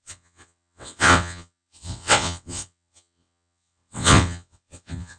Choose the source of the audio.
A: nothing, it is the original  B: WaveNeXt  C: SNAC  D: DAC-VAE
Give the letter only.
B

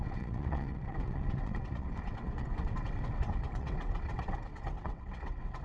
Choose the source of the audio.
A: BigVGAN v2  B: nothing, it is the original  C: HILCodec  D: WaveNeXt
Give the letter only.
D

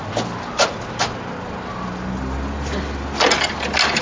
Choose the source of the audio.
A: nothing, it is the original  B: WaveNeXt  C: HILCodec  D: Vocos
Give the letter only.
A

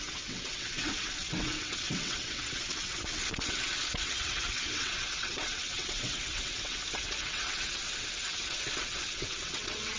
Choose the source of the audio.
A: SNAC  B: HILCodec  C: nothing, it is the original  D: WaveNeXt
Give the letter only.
D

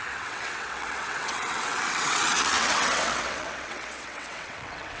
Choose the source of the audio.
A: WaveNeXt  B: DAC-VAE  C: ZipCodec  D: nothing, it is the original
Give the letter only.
A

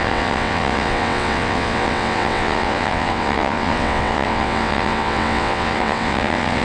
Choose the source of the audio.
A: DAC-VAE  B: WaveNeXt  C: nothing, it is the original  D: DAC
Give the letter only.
B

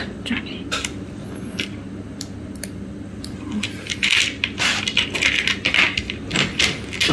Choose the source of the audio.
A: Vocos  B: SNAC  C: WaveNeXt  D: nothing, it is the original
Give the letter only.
D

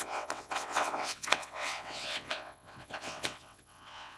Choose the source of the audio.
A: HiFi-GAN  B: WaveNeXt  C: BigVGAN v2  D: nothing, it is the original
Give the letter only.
B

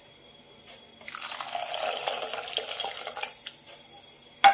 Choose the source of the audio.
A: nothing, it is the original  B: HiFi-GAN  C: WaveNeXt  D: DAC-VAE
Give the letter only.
A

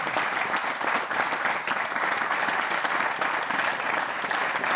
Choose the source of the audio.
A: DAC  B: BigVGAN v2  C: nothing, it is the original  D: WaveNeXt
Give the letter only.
C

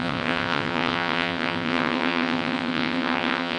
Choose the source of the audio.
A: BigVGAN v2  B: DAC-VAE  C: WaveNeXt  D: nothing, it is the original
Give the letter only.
C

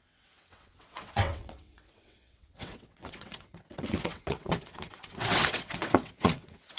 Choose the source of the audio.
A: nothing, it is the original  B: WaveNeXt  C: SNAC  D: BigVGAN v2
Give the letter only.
B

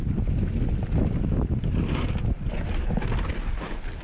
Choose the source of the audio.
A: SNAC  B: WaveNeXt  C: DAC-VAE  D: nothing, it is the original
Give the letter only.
D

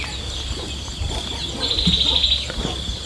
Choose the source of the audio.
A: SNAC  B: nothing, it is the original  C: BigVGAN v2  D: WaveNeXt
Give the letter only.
B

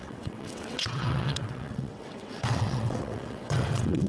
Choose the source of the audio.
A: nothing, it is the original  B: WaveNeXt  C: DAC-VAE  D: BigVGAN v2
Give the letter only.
B